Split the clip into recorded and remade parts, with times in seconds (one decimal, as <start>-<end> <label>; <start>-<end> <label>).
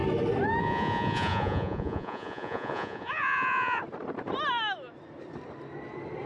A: 0.0-0.6 recorded; 0.6-3.8 remade; 3.8-6.3 recorded